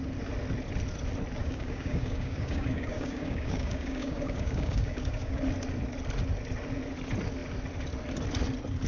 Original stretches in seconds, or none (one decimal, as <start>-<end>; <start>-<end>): 0.0-1.4; 5.4-8.9